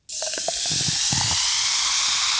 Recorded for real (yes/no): yes